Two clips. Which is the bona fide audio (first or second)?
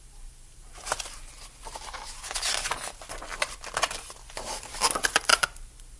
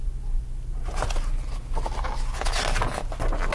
second